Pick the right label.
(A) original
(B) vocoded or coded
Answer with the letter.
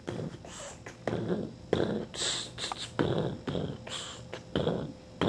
A